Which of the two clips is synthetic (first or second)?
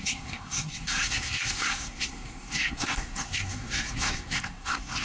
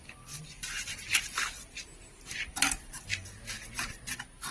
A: first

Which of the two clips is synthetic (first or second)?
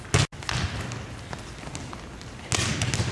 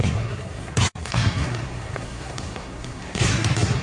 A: second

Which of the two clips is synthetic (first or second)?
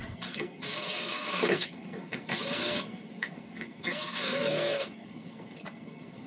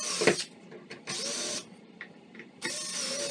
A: first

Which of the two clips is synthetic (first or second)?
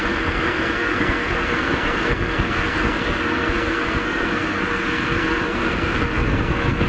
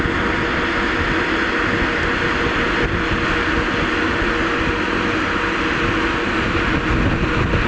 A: first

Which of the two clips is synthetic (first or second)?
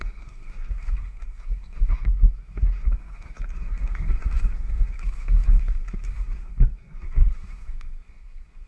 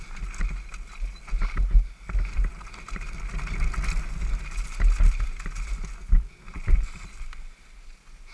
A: first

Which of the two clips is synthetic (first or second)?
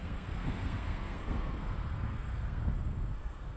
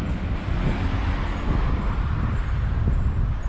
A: first